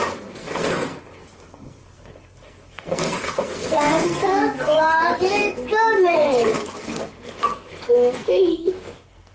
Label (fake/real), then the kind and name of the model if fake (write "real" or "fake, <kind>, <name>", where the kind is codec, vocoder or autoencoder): fake, codec, SNAC